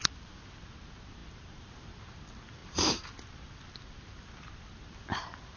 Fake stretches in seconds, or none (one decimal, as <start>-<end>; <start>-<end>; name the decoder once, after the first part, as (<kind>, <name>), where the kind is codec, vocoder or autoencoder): none